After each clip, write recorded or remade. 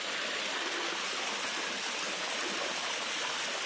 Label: recorded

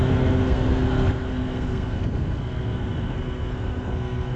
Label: remade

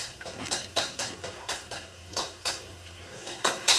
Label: remade